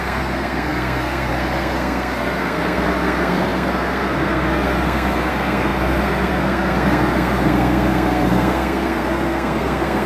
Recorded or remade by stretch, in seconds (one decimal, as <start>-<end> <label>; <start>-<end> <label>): 0.0-10.1 remade